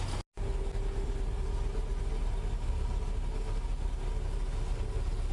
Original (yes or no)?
yes